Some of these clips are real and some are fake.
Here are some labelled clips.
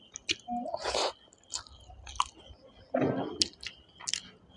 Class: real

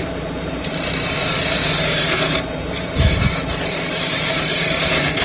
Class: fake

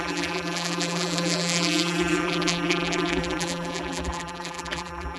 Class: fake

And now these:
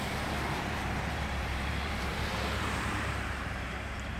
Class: fake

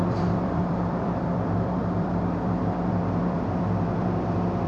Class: fake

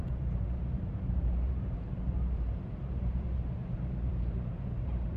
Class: fake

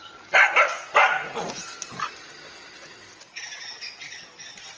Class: real